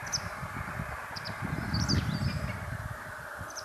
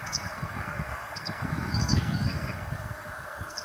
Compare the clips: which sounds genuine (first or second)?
first